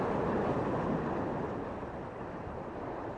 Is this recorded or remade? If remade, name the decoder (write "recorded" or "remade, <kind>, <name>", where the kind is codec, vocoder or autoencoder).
recorded